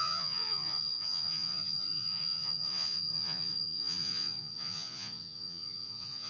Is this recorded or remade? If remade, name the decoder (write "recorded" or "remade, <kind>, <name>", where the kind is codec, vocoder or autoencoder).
remade, vocoder, Vocos